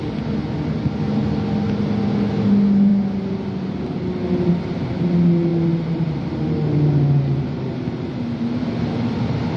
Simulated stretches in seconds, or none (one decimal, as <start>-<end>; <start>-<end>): none